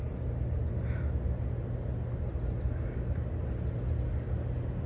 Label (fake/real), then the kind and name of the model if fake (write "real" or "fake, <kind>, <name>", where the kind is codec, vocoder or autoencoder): real